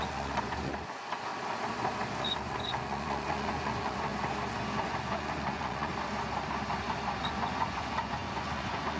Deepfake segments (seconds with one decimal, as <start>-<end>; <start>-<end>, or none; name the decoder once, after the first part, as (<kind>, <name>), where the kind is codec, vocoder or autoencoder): 0.0-1.3 (vocoder, Vocos); 2.2-4.1; 4.8-5.9; 7.2-9.0